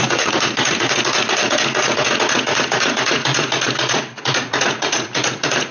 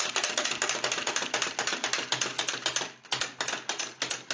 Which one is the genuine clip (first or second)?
second